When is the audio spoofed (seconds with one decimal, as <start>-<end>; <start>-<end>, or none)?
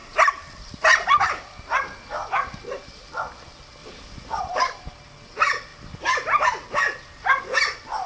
0.0-2.6; 3.8-4.4